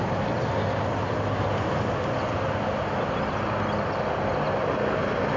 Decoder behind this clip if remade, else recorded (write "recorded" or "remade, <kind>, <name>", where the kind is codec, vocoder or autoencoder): recorded